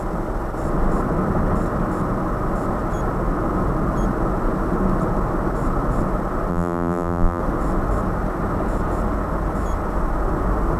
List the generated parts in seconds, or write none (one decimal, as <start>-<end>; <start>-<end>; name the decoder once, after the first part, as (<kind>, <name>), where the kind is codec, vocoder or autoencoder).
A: 6.5-7.4 (vocoder, BigVGAN v2)